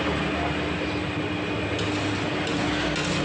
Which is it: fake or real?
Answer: real